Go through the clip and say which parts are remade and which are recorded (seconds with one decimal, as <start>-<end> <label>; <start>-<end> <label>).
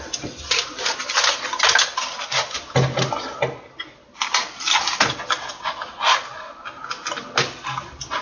0.0-8.2 recorded